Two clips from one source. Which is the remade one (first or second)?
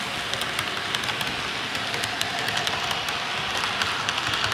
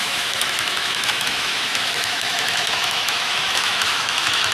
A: second